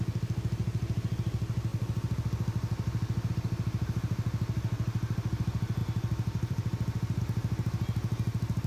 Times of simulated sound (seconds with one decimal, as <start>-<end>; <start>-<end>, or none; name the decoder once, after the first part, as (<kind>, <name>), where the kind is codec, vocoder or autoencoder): 5.8-7.2 (vocoder, BigVGAN v2)